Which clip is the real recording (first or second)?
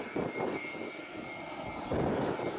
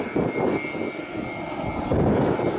second